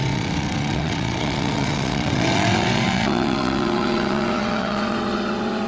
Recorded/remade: remade